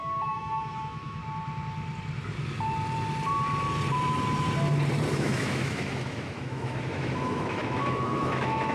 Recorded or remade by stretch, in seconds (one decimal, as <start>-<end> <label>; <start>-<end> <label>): 0.0-1.2 remade; 1.2-5.1 recorded; 5.1-8.7 remade